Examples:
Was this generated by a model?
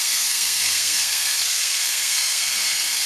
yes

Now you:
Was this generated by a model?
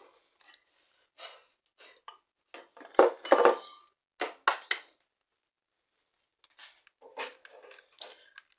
no